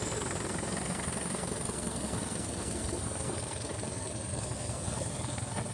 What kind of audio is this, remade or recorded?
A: remade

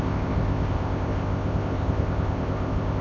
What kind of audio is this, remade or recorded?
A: remade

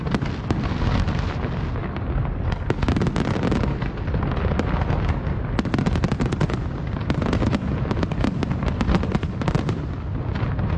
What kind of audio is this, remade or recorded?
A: recorded